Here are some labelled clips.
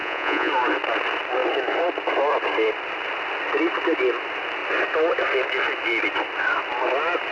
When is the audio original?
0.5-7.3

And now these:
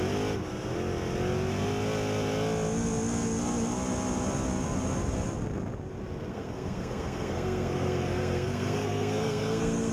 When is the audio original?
0.0-6.3

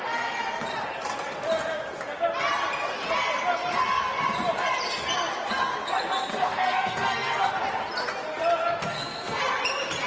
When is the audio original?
0.0-6.3; 7.5-8.8; 9.4-10.1

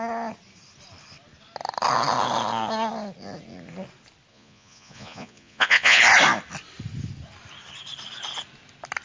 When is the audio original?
0.0-4.3; 6.0-9.0

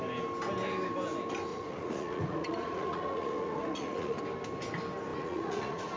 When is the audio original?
0.0-1.5; 4.2-5.2

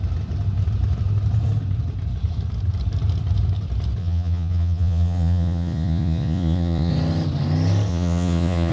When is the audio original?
0.0-4.0; 6.9-7.9

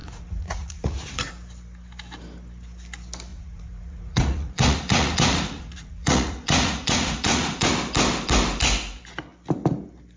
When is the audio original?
1.3-3.3; 7.7-10.2